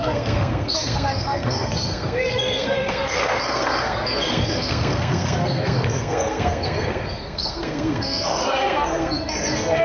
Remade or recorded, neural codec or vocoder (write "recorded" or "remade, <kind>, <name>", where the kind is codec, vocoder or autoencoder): remade, codec, SNAC